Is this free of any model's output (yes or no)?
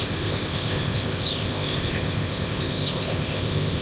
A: no